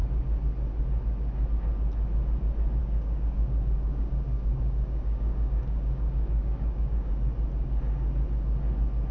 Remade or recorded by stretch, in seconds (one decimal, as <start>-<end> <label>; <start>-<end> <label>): 0.0-2.8 recorded; 2.8-7.1 remade; 7.1-9.1 recorded